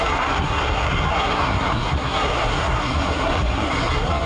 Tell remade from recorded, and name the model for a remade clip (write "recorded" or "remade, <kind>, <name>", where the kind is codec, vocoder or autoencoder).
remade, codec, SNAC